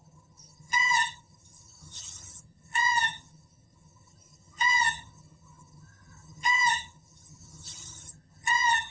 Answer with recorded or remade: remade